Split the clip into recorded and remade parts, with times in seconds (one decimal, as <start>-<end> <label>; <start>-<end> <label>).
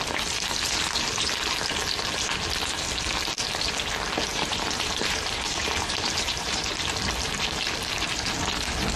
0.0-4.3 recorded; 4.3-6.7 remade; 6.7-9.0 recorded